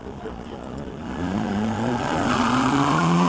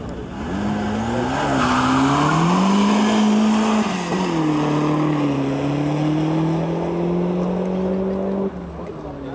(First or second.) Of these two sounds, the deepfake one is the first